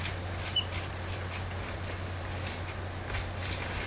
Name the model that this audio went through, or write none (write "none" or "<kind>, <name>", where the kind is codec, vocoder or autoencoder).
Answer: none